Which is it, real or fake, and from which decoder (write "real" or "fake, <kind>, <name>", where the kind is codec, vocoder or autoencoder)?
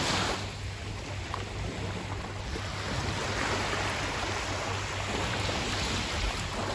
real